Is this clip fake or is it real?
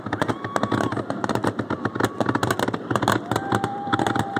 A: fake